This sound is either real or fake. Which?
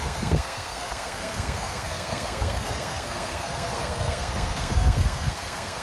fake